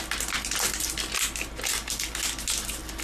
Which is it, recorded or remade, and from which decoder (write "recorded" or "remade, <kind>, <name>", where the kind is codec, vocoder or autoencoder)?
recorded